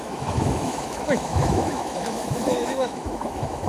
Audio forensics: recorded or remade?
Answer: remade